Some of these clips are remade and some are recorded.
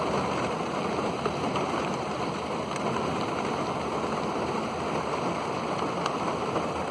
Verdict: remade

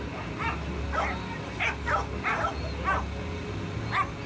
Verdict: recorded